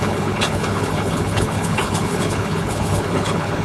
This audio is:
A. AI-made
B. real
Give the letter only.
A